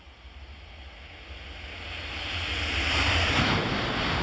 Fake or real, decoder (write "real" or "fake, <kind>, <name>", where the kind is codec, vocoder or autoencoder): real